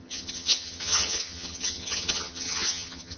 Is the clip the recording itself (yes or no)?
no